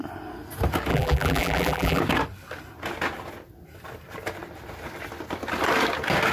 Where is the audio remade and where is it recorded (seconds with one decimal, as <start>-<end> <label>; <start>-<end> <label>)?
0.0-0.9 recorded; 0.9-2.0 remade; 2.0-6.3 recorded